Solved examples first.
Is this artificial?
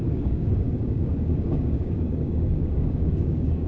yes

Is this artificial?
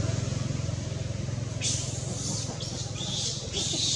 no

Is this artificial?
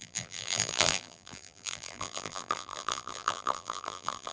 yes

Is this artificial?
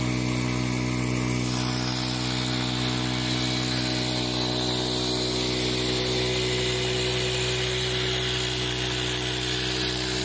no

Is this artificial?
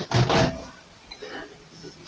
no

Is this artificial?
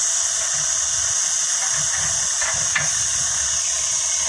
no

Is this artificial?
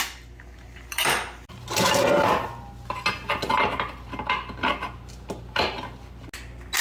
no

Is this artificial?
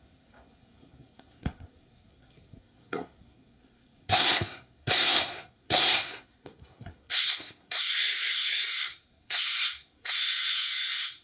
yes